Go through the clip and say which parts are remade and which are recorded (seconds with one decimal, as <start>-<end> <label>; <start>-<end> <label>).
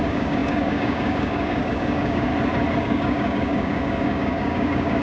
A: 0.0-2.3 remade; 2.3-2.8 recorded; 2.8-5.0 remade